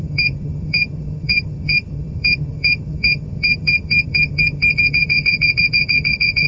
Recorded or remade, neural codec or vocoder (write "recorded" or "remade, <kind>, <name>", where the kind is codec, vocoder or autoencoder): remade, vocoder, HiFi-GAN